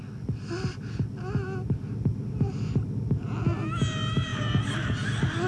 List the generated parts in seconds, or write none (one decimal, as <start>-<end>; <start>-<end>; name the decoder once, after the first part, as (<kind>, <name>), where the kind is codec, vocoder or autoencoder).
none